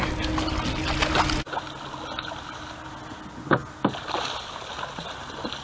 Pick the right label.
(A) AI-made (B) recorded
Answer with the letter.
B